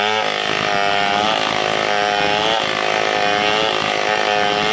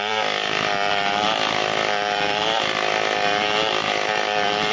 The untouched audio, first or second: first